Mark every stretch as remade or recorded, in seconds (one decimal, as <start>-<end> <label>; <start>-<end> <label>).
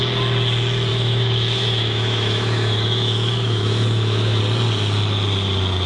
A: 0.0-0.9 recorded; 0.9-4.4 remade; 4.4-5.9 recorded